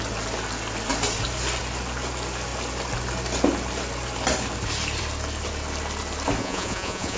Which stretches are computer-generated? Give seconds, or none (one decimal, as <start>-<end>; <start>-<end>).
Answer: 6.4-7.2